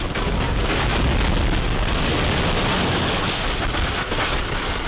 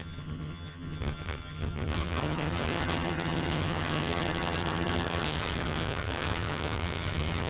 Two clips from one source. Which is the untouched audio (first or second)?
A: first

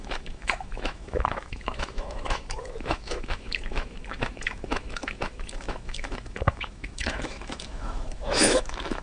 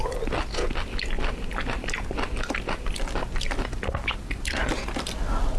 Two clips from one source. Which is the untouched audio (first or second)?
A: second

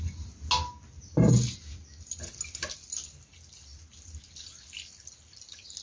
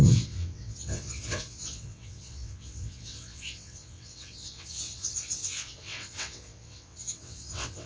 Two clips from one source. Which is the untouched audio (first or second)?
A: first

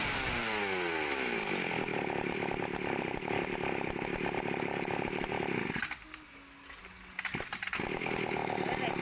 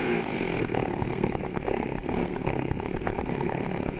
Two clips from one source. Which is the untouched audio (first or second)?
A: first